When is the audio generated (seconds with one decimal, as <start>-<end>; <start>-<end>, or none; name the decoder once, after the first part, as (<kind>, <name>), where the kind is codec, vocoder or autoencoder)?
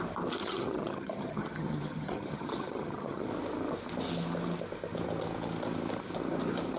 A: 0.4-3.3 (vocoder, HiFi-GAN)